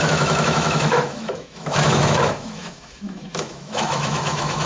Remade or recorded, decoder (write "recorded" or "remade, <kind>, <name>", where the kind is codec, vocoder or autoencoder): remade, autoencoder, DAC-VAE